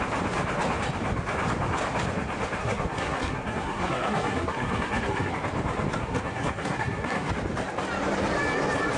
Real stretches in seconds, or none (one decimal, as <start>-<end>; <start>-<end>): 0.0-2.6; 5.3-6.0; 7.3-9.0